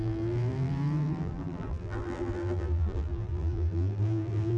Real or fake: fake